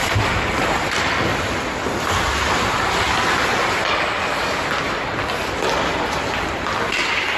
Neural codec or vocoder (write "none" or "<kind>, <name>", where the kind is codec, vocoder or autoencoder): none